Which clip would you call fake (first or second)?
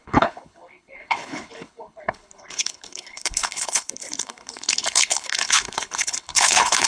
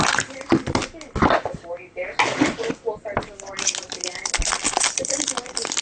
first